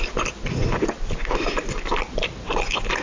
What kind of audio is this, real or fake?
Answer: real